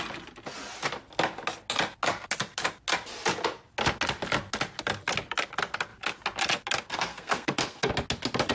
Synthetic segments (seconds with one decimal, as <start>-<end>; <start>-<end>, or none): 7.1-7.9